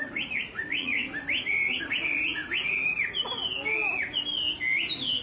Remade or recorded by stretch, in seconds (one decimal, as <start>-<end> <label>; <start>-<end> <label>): 0.0-1.0 remade; 1.0-1.9 recorded; 1.9-2.4 remade; 2.4-5.2 recorded